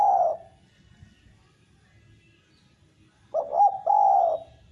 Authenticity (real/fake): real